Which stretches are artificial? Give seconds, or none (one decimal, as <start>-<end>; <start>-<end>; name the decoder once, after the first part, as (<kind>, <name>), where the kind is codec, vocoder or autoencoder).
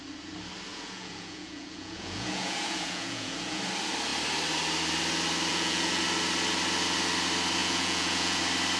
0.7-3.6 (vocoder, Vocos); 5.5-6.0; 7.6-8.4